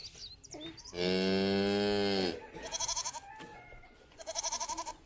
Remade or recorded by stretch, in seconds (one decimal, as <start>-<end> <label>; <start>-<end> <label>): 0.0-3.5 recorded; 3.5-5.1 remade